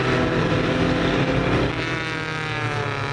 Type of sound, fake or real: real